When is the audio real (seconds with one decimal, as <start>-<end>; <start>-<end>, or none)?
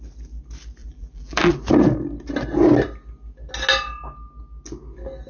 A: 0.0-0.8; 1.5-5.3